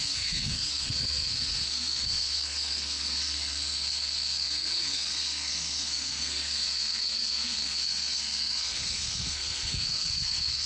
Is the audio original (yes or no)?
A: no